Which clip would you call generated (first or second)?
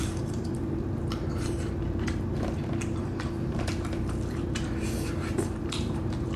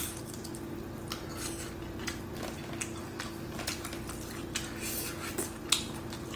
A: first